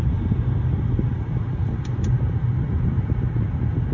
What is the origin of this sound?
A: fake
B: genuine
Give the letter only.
B